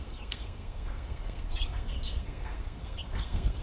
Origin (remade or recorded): remade